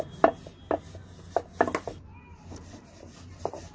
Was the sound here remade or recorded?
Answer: recorded